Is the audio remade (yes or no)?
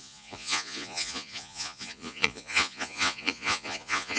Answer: yes